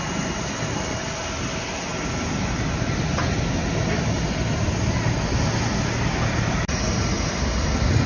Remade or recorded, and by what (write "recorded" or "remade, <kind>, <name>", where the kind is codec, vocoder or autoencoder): recorded